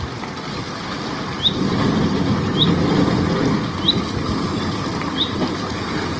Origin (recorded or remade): recorded